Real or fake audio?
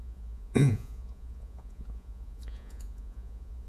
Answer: fake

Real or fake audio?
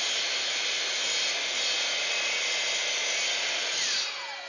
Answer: real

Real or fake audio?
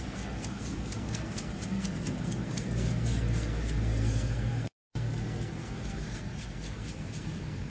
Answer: fake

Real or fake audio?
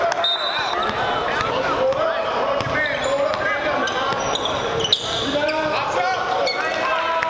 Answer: real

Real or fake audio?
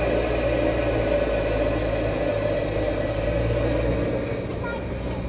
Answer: real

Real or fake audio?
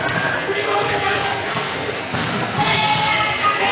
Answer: fake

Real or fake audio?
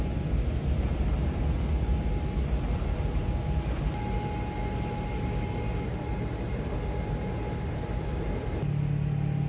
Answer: real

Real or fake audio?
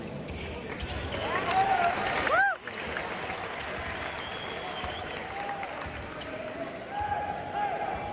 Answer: real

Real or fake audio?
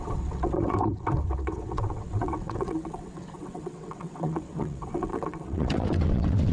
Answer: fake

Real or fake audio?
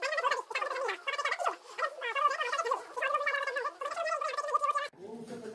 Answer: real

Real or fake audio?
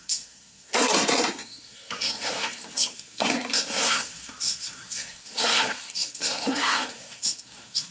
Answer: fake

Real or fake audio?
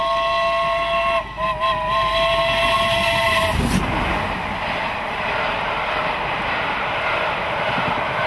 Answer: real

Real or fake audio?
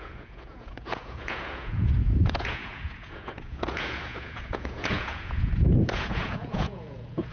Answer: fake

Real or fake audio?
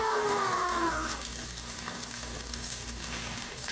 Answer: fake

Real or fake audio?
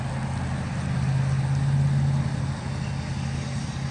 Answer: real